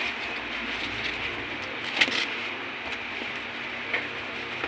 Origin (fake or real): real